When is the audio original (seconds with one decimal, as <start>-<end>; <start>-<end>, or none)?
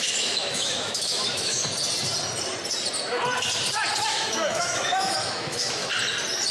1.6-4.1; 5.8-6.5